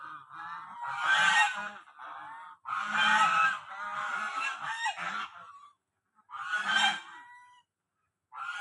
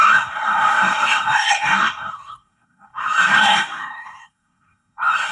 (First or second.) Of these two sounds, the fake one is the second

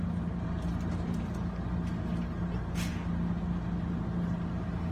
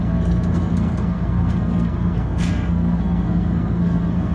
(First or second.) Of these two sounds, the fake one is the second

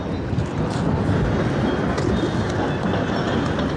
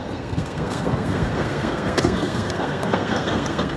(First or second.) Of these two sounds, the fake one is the second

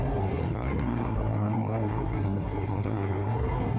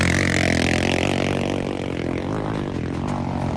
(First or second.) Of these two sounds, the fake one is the first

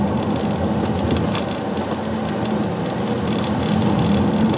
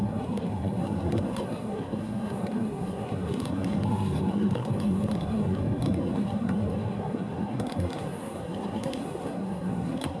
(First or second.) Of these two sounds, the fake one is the second